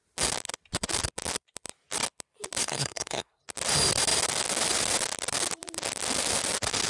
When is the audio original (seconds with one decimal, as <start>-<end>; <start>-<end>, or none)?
0.0-2.6; 3.4-6.9